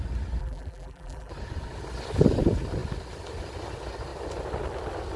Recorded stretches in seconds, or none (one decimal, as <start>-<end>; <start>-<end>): 0.0-0.4; 1.3-5.2